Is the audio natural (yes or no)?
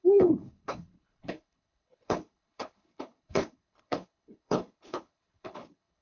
no